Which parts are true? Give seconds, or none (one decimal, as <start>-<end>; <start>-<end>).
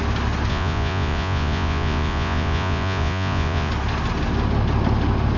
0.0-0.5; 3.7-5.4